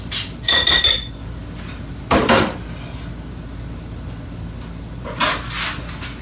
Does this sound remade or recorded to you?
recorded